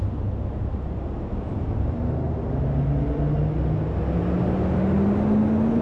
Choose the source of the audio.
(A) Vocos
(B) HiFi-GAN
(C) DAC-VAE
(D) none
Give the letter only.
D